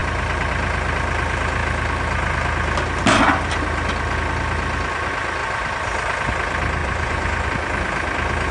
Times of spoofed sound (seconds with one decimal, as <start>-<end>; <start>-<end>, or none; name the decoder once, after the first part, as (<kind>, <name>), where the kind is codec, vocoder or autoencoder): 6.8-7.5 (vocoder, Vocos)